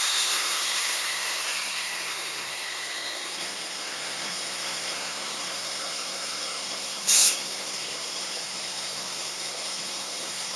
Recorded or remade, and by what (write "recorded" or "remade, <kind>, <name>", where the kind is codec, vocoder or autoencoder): remade, codec, SNAC